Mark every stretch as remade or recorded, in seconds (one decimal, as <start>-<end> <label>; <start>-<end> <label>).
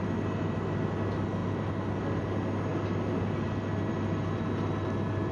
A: 0.0-5.3 recorded